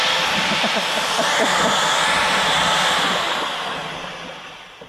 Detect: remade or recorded recorded